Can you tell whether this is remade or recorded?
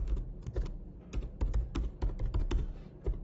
recorded